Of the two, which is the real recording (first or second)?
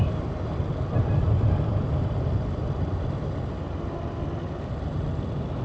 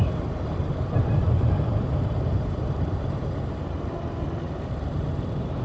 first